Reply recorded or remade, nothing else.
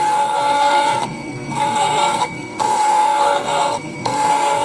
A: remade